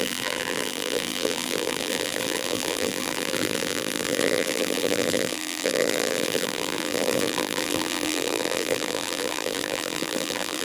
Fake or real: fake